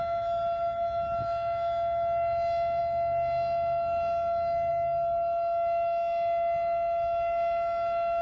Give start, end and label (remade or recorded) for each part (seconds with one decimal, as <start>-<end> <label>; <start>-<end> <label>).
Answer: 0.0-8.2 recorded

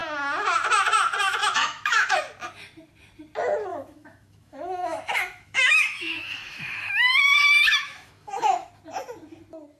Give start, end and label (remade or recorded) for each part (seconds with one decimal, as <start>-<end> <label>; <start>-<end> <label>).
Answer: 0.0-1.4 recorded; 1.4-2.2 remade; 2.2-3.7 recorded; 3.7-8.7 remade; 8.7-9.8 recorded

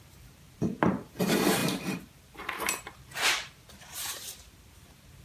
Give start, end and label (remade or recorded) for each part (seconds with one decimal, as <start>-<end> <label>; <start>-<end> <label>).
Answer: 0.0-5.2 remade

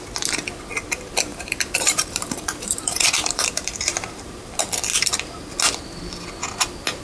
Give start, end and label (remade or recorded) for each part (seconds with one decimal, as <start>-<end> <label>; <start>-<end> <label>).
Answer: 0.0-1.3 recorded; 1.3-4.5 remade; 4.5-4.9 recorded; 4.9-5.5 remade; 5.5-7.0 recorded

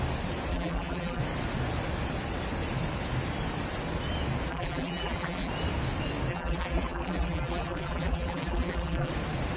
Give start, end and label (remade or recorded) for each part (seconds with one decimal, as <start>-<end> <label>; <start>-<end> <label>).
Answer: 0.0-0.5 recorded; 0.5-1.2 remade; 1.2-4.5 recorded; 4.5-5.5 remade; 5.5-6.3 recorded; 6.3-9.1 remade; 9.1-9.6 recorded

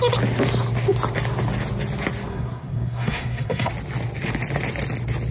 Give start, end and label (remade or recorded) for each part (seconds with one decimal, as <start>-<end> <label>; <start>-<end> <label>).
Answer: 0.0-2.3 recorded; 2.3-3.7 remade; 3.7-5.3 recorded